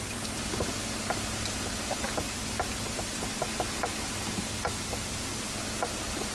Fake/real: real